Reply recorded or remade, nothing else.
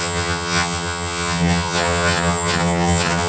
remade